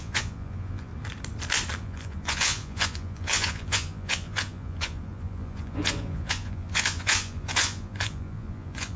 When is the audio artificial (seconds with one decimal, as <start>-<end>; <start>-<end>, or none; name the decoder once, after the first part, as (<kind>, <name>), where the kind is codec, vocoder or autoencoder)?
0.0-0.9 (vocoder, Vocos); 1.8-9.0